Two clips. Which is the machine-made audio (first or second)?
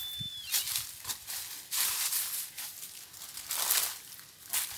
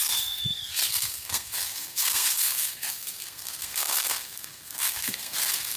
second